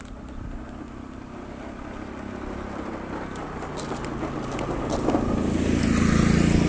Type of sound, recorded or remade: recorded